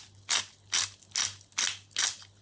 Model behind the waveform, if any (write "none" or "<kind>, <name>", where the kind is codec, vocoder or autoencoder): none